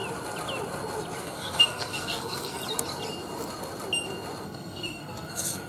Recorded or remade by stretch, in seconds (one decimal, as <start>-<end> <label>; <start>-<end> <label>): 0.0-1.2 recorded; 1.2-2.6 remade; 2.6-4.4 recorded; 4.4-5.7 remade